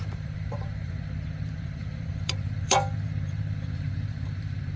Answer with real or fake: fake